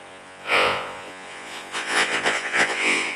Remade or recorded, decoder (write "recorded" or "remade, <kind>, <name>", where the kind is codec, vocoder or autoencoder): remade, vocoder, Vocos